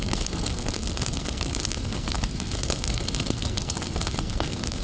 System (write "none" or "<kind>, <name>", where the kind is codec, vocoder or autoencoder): codec, SNAC